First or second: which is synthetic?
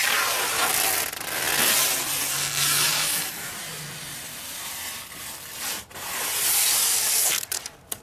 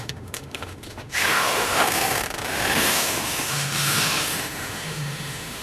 second